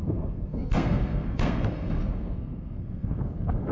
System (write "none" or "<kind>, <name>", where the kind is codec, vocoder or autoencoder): codec, SNAC